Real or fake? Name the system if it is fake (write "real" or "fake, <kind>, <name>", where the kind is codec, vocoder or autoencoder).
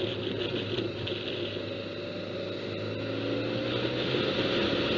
real